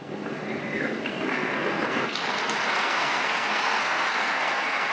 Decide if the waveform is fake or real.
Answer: fake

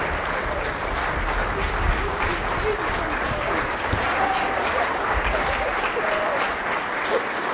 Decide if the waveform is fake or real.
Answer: real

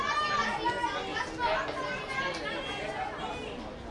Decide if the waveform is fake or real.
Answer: real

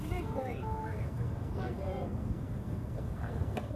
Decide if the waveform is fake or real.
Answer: fake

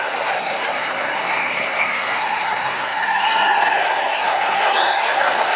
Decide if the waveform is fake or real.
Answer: fake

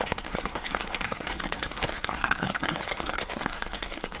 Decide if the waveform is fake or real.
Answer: fake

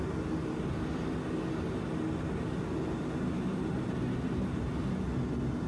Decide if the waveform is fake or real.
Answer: real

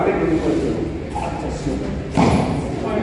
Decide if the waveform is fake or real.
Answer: real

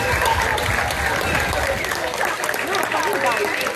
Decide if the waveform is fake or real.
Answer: real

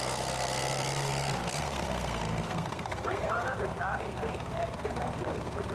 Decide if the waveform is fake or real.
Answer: fake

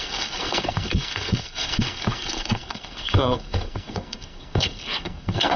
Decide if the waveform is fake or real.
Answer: fake